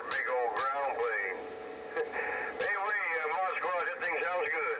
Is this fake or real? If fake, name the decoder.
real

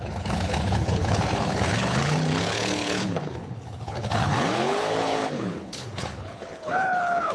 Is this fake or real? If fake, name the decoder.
fake, codec, HILCodec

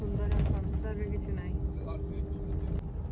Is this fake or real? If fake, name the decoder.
real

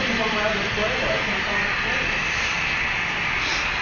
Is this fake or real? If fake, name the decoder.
real